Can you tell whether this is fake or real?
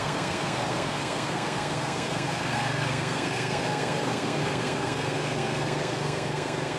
fake